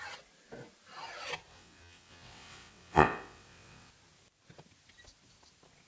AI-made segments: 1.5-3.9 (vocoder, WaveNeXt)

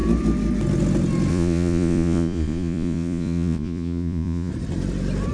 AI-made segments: 1.3-4.5 (vocoder, Vocos)

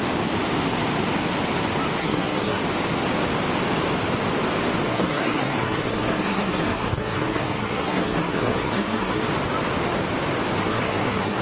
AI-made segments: 2.0-2.6 (codec, SNAC); 4.9-9.3; 10.6-11.4

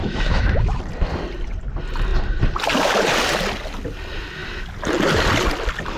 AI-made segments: 0.0-0.8 (autoencoder, DAC-VAE)

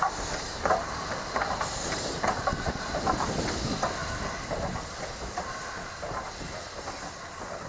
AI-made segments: none

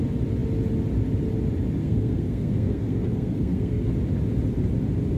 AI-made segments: 1.8-3.9 (codec, SNAC)

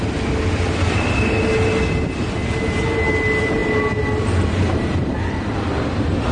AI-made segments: none

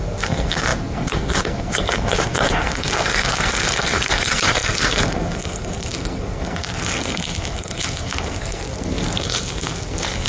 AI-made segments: 0.0-10.3 (codec, SNAC)